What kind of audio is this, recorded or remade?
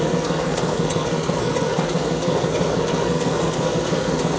remade